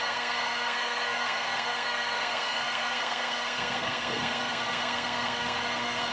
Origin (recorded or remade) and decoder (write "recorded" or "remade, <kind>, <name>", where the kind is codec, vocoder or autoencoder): remade, codec, SNAC